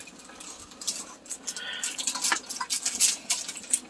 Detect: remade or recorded recorded